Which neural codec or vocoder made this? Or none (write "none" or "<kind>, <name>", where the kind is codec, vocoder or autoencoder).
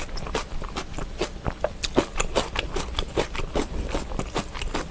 none